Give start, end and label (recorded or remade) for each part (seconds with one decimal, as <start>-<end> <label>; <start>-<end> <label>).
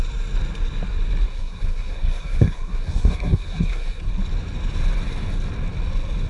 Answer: 0.0-1.3 recorded; 1.3-4.0 remade; 4.0-6.3 recorded